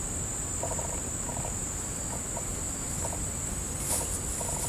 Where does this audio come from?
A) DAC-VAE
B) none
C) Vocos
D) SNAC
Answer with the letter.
B